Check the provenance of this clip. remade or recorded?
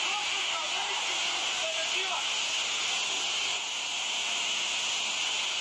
recorded